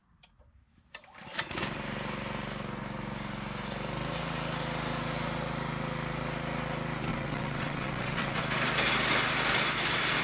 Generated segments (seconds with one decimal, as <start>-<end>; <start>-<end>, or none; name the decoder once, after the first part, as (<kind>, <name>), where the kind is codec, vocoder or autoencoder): 7.1-8.4 (vocoder, WaveNeXt)